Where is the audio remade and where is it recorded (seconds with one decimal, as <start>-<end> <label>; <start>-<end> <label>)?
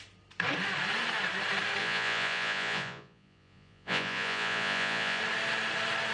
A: 0.0-1.8 recorded; 1.8-5.2 remade; 5.2-6.1 recorded